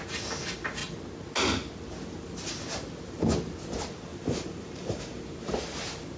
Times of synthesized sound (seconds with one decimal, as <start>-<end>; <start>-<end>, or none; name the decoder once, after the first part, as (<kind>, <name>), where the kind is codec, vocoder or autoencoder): 4.1-5.2 (vocoder, BigVGAN v2)